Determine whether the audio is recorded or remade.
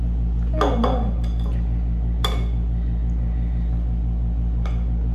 recorded